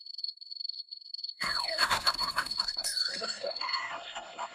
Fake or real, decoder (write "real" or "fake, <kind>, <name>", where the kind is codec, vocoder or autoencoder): fake, codec, SNAC